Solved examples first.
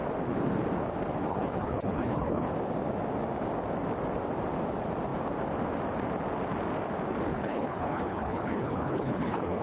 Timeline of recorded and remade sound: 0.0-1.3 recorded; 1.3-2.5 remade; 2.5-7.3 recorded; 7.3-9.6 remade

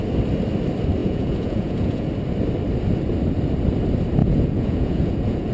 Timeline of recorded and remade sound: 0.0-1.0 recorded; 1.0-2.1 remade; 2.1-4.2 recorded; 4.2-5.5 remade

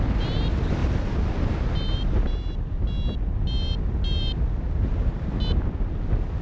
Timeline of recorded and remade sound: 0.0-6.4 recorded

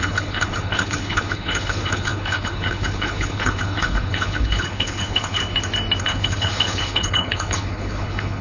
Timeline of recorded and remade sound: 0.0-5.4 remade; 5.4-6.0 recorded; 6.0-8.4 remade

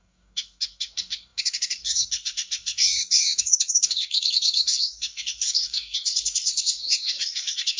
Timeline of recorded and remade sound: 0.0-7.8 remade

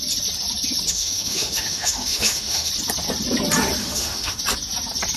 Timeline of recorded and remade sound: 0.0-0.9 recorded; 0.9-2.7 remade; 2.7-3.8 recorded; 3.8-4.4 remade; 4.4-5.2 recorded

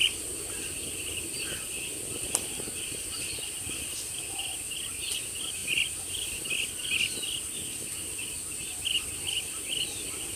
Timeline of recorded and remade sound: 0.0-10.4 recorded

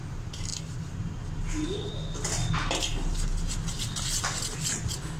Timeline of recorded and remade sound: 0.0-5.2 recorded